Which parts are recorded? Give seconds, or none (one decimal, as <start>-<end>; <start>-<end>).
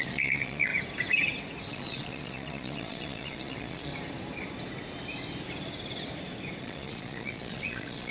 0.7-1.7; 3.9-6.6